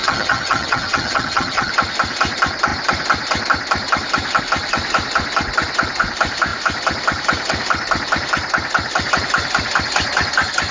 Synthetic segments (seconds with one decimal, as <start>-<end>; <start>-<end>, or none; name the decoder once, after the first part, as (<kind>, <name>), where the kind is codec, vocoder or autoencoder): 0.0-1.7 (vocoder, HiFi-GAN)